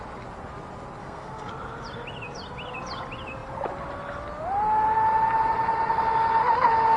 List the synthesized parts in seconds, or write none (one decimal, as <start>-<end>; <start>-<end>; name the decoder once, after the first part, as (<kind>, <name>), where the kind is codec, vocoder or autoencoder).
1.0-1.5 (codec, SNAC)